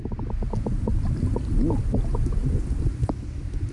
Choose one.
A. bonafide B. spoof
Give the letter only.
A